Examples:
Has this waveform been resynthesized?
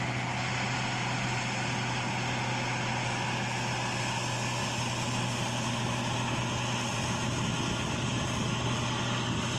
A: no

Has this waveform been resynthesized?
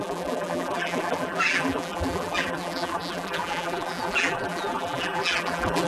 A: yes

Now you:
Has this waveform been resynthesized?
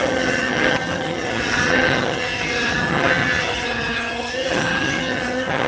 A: yes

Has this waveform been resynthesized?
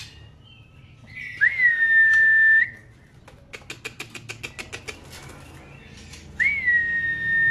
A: no